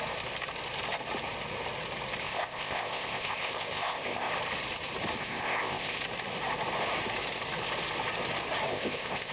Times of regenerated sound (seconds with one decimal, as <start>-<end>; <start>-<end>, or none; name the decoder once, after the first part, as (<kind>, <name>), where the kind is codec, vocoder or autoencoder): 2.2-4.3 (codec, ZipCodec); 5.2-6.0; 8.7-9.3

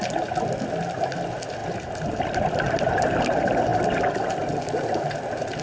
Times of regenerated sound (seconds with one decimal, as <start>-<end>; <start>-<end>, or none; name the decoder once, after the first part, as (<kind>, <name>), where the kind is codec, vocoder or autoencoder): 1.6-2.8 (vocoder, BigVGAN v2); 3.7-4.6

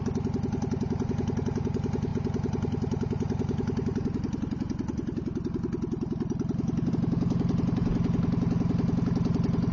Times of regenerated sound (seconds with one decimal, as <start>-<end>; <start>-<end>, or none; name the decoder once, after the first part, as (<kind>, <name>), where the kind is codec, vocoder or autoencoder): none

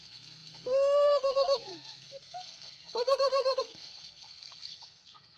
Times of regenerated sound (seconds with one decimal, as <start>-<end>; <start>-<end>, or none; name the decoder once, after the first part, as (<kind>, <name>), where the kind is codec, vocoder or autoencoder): 0.0-5.4 (codec, SNAC)

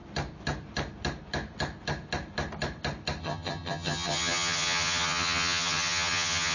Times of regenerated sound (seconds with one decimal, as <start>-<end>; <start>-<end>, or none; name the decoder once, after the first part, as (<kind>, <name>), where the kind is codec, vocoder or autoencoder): 3.2-6.5 (vocoder, HiFi-GAN)